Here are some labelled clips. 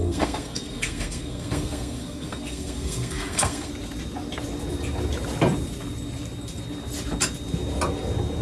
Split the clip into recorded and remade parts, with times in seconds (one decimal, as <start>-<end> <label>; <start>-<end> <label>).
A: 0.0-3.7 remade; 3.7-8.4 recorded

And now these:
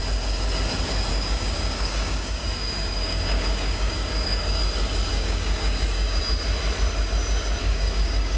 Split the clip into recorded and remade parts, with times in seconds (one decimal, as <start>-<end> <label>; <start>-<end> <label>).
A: 0.0-1.1 recorded; 1.1-4.6 remade; 4.6-5.1 recorded; 5.1-6.2 remade; 6.2-7.6 recorded; 7.6-8.4 remade

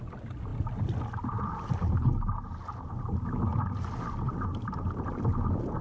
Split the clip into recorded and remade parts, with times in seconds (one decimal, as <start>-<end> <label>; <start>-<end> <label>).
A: 0.0-5.8 recorded